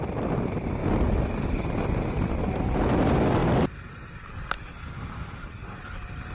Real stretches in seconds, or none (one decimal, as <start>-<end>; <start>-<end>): 0.0-6.3